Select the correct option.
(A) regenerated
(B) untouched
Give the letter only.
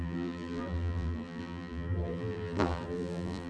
A